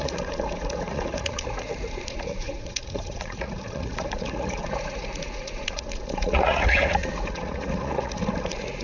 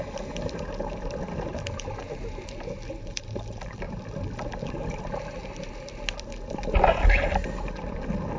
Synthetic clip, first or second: first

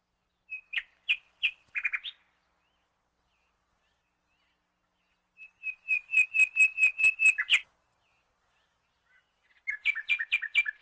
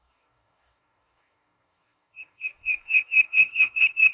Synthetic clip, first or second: second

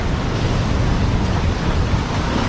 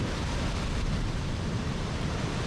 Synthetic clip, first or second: second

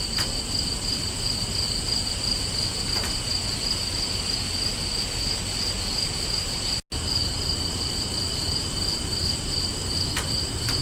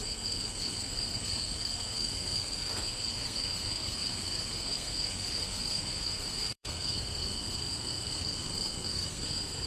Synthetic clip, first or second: second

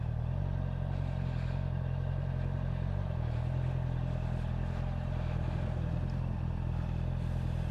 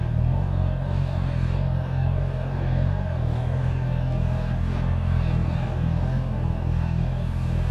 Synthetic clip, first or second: second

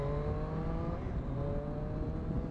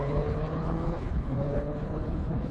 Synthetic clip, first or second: second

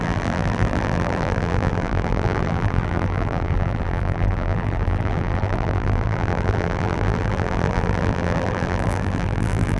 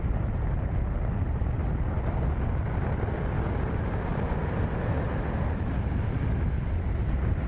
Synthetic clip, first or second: first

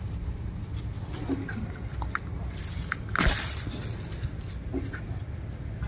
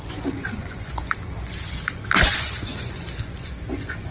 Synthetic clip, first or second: second